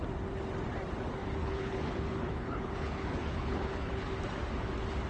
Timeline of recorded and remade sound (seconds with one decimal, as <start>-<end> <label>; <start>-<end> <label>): 0.0-1.2 recorded; 1.2-4.1 remade; 4.1-5.1 recorded